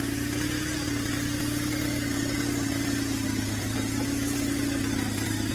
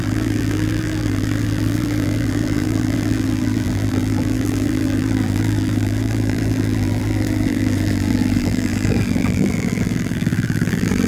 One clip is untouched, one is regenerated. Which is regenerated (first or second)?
second